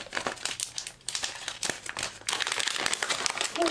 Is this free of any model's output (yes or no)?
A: yes